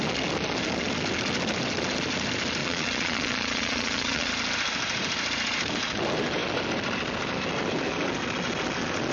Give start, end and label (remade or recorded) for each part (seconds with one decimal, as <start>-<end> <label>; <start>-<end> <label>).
0.0-2.6 recorded; 2.6-4.3 remade; 4.3-9.1 recorded